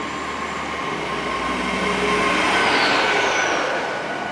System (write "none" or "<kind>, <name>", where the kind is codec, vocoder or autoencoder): none